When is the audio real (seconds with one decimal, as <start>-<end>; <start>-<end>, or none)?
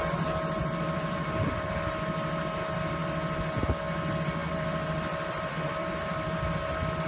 0.0-0.6; 2.0-4.4; 6.6-7.1